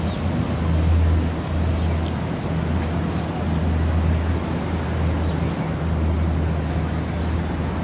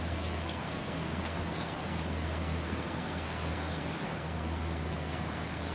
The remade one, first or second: second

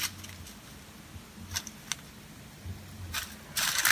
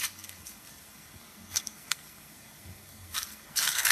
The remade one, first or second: second